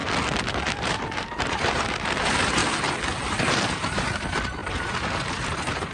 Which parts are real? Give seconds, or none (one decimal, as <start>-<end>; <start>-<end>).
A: 0.0-0.7; 2.6-3.3